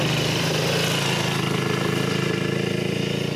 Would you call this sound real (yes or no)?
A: yes